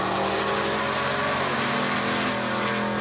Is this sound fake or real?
real